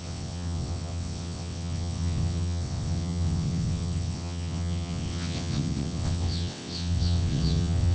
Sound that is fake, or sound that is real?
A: fake